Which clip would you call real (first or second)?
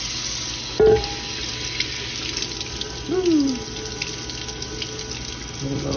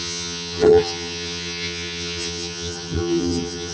first